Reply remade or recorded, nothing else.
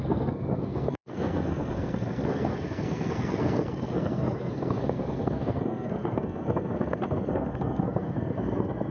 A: remade